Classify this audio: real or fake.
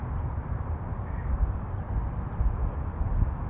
real